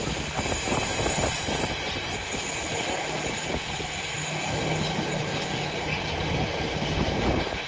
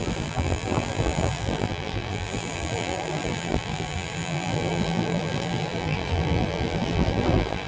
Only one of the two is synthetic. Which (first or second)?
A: second